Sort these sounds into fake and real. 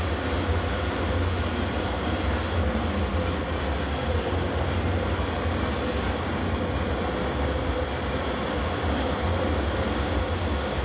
real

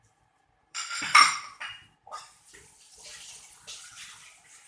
fake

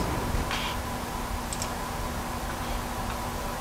real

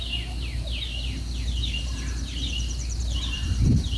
real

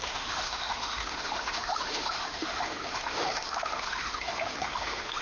fake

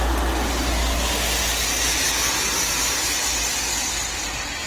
real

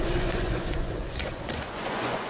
fake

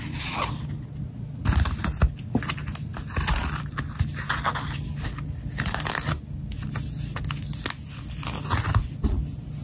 real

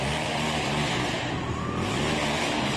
real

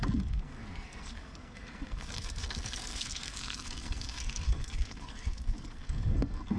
fake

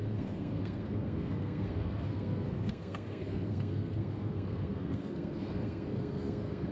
fake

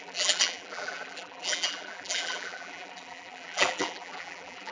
fake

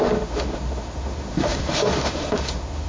fake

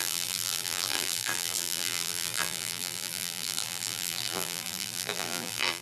fake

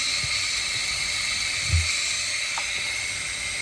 real